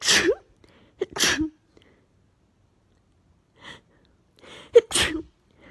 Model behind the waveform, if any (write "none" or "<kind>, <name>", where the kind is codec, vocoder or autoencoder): none